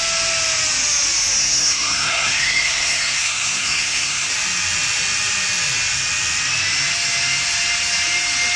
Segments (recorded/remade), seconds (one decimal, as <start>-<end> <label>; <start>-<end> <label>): 0.0-1.4 recorded; 1.4-4.3 remade; 4.3-8.6 recorded